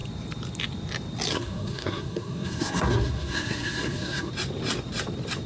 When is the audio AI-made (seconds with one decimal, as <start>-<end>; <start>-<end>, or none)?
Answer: 1.3-4.3